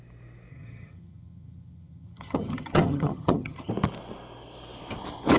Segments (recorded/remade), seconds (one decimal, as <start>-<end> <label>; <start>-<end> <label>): 0.0-0.5 recorded; 0.5-3.7 remade; 3.7-5.4 recorded